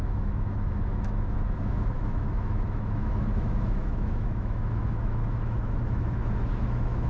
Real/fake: fake